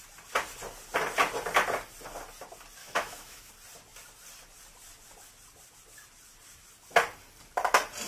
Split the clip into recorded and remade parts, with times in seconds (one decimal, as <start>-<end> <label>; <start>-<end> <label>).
0.0-2.8 recorded; 2.8-3.5 remade; 3.5-8.1 recorded